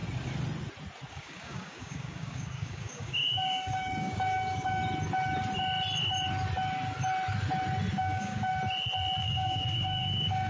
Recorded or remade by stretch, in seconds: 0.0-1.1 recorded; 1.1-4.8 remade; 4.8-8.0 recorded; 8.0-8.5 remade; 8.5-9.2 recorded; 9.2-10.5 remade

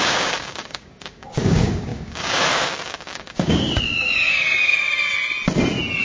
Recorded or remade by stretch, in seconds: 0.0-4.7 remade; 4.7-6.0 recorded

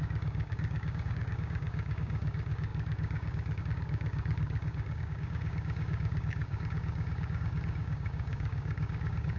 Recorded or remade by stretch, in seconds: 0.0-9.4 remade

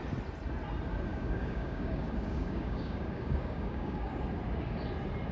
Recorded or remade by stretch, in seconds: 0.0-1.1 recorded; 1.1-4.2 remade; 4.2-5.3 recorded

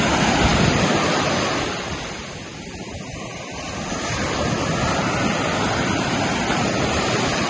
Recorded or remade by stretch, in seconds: 0.0-7.5 recorded

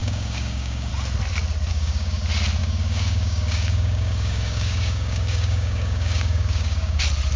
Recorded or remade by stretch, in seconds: 0.0-0.9 remade; 0.9-1.7 recorded; 1.7-2.2 remade; 2.2-2.6 recorded; 2.6-7.0 remade; 7.0-7.4 recorded

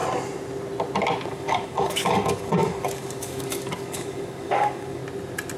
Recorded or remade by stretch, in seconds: 0.0-1.3 recorded; 1.3-5.0 remade; 5.0-5.6 recorded

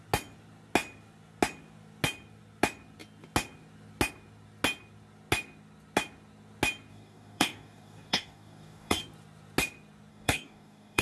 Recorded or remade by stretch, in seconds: 0.0-6.9 recorded; 6.9-9.0 remade; 9.0-10.1 recorded; 10.1-11.0 remade